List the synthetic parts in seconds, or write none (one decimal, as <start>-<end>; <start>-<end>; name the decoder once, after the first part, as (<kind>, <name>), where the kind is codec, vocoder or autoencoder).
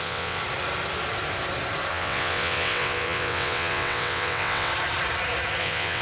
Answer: 0.0-0.4 (vocoder, WaveNeXt); 1.9-4.7; 5.6-6.0